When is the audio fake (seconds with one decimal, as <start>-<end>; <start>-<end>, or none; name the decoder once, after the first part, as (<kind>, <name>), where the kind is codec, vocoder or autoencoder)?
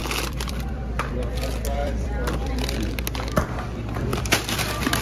0.0-1.1 (vocoder, BigVGAN v2); 1.8-2.9; 4.1-5.0